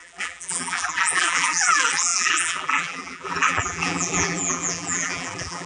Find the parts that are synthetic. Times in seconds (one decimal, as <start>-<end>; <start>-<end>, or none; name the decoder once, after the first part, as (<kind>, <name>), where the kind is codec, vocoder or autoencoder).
0.0-5.7 (vocoder, BigVGAN v2)